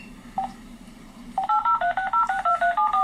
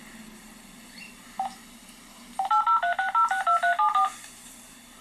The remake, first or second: first